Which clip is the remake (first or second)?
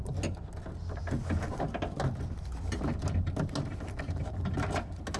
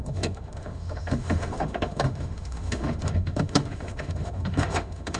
second